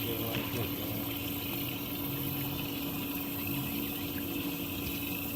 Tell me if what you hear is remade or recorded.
recorded